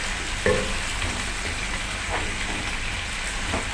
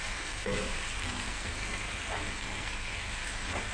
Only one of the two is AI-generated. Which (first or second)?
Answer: second